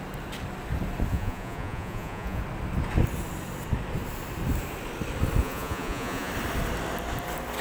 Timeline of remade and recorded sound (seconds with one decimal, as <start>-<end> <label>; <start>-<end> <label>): 0.0-1.1 recorded; 1.1-2.4 remade; 2.4-5.4 recorded; 5.4-6.3 remade; 6.3-7.6 recorded